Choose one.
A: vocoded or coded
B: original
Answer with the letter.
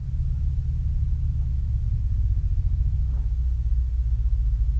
B